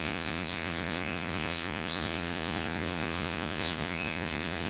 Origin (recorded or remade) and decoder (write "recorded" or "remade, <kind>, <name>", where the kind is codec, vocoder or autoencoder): remade, vocoder, Vocos